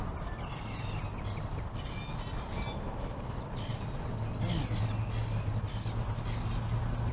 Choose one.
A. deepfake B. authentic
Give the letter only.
B